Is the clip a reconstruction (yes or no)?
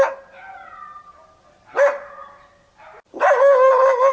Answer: no